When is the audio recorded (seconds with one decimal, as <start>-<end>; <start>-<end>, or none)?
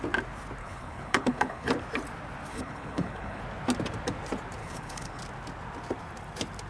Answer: 0.0-0.6; 1.7-2.5; 3.4-4.6; 5.2-6.7